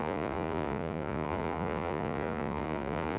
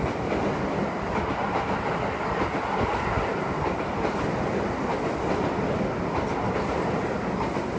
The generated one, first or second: first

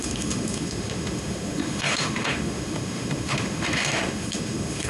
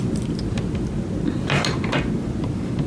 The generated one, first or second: first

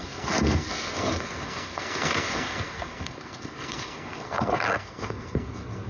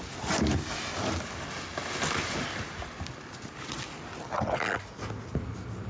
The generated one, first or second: first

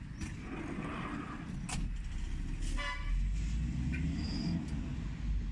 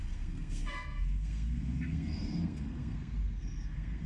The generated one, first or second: second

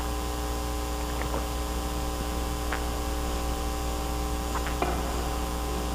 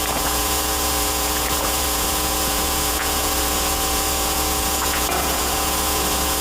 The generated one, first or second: second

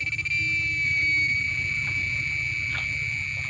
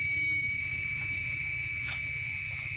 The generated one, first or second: second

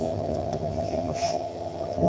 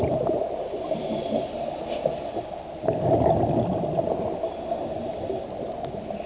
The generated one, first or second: first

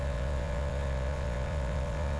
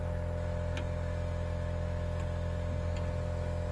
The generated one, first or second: first